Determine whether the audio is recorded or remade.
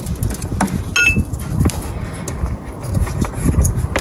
recorded